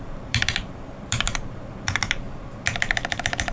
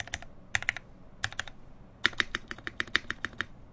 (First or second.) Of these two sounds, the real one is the second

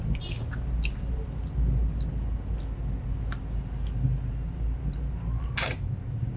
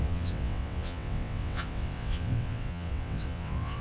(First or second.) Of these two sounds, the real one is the first